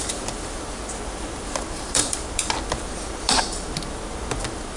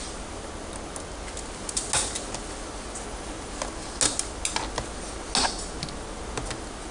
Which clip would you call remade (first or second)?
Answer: first